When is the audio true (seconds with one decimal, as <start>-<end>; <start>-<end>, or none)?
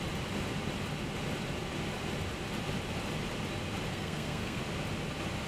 0.0-3.9; 4.6-5.5